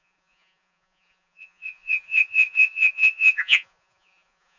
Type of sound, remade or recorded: remade